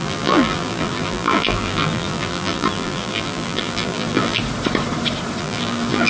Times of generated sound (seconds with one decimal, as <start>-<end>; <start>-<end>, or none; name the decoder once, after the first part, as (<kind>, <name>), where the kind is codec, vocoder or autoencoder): 0.0-4.4 (vocoder, BigVGAN v2); 5.4-6.1